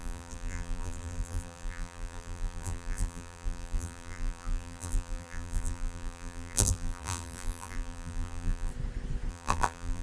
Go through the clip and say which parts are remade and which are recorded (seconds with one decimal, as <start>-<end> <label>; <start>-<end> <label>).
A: 0.0-8.7 remade; 8.7-9.3 recorded; 9.3-10.0 remade